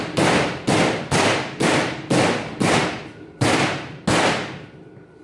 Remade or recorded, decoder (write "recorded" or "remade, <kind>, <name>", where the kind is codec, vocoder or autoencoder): recorded